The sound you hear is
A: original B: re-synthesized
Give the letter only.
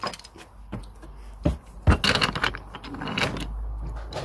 A